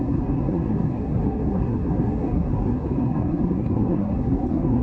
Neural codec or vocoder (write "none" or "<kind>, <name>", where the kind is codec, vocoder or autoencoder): codec, SNAC